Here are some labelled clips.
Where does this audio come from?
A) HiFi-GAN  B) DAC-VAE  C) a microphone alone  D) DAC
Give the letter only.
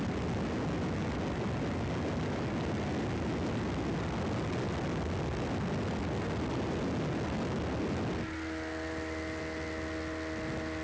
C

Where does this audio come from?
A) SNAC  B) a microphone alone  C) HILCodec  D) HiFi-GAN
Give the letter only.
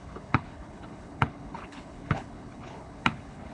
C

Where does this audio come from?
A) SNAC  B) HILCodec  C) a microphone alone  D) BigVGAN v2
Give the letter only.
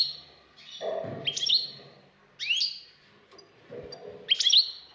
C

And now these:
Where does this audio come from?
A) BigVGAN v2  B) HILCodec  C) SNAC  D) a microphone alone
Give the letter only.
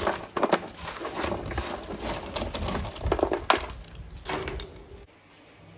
D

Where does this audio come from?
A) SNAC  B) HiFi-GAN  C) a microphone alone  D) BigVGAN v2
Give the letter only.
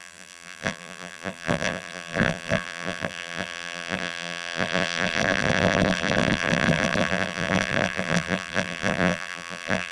D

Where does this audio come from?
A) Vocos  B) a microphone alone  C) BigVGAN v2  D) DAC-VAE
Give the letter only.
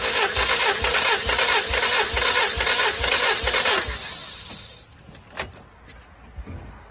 B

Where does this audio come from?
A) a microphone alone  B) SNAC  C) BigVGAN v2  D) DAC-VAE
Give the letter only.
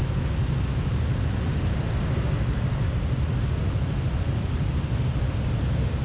A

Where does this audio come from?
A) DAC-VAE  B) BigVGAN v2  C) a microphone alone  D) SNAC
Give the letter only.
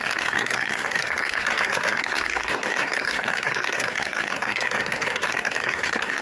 D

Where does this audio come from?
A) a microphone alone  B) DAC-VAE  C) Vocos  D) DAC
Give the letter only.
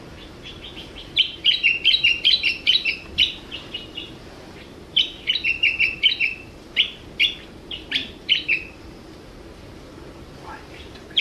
A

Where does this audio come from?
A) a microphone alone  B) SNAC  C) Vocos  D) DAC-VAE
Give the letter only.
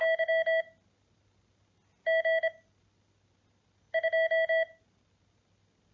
A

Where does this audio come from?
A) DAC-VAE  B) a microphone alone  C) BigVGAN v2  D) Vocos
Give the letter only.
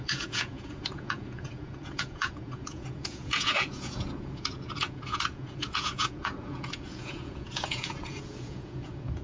D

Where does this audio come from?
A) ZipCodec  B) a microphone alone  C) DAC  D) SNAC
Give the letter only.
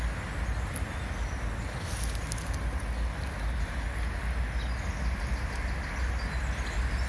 B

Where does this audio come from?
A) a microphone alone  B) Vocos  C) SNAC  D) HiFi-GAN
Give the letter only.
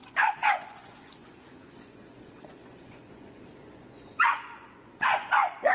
B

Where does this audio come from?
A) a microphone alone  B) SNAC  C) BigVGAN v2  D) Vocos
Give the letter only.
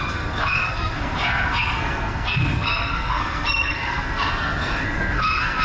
B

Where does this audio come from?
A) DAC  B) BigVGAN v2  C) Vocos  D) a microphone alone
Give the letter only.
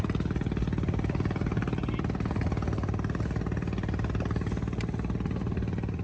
D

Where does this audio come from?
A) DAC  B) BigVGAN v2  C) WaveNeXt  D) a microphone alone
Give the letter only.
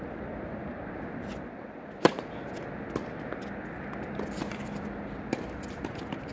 D